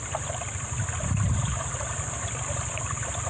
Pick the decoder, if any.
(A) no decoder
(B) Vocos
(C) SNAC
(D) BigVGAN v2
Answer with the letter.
A